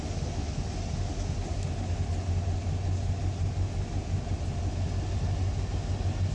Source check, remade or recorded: recorded